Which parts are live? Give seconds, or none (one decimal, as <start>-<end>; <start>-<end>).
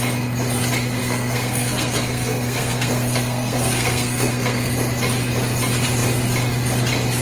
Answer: 0.0-1.0; 4.7-7.2